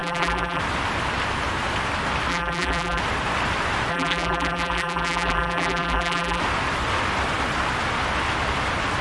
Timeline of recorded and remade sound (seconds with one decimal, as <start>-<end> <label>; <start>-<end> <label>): 0.0-0.6 remade; 0.6-2.3 recorded; 2.3-3.0 remade; 3.0-3.9 recorded; 3.9-6.4 remade; 6.4-9.0 recorded